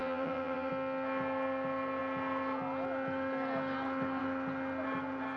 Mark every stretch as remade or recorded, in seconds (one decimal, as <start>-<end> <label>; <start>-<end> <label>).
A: 0.0-0.7 remade; 0.7-5.4 recorded